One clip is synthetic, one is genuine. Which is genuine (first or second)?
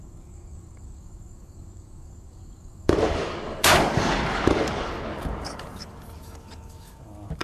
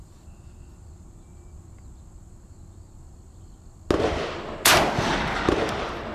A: second